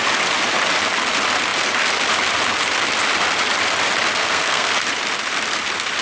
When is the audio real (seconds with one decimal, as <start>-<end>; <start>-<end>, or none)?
0.0-4.2; 4.7-6.0

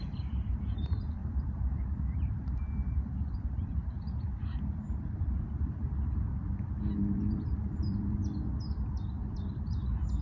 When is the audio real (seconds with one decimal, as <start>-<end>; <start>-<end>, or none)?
8.2-9.7